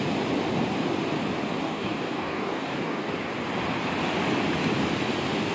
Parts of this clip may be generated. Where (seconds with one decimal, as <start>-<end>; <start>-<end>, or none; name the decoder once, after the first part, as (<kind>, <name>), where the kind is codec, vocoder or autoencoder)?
1.6-3.1 (codec, DAC)